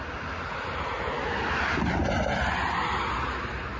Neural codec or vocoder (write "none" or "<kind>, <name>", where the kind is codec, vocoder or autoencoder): none